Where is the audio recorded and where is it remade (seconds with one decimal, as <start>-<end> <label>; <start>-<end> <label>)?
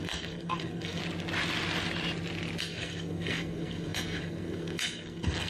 0.0-1.0 remade; 1.0-2.6 recorded; 2.6-5.5 remade